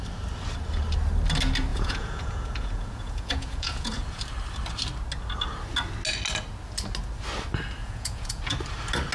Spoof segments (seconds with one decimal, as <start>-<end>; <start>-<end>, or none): 1.7-4.2; 7.8-8.4